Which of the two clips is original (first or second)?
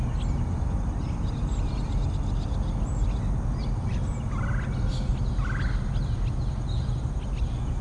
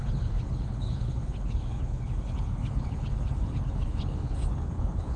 first